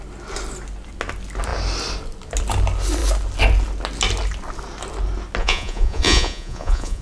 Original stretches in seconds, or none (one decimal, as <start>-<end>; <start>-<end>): 0.0-5.4